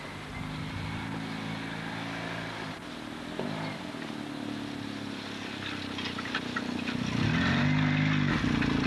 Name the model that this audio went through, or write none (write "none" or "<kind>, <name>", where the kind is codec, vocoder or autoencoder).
none